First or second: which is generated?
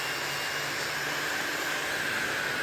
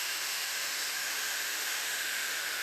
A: second